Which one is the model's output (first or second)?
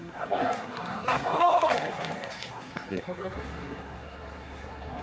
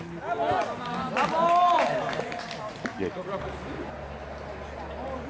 first